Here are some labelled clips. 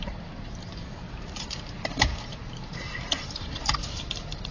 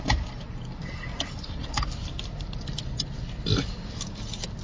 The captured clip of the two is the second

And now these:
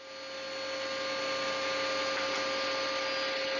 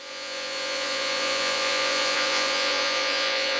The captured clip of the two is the first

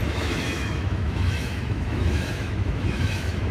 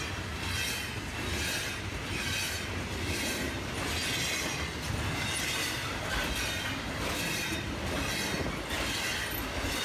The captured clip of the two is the second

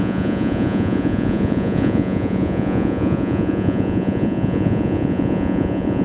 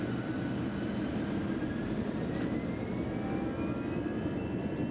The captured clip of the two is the second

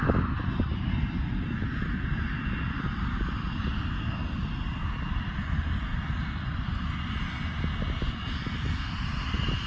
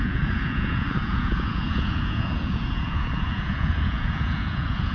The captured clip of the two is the first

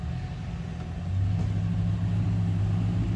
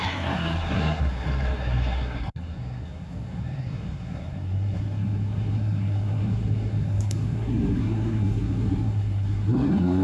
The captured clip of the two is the first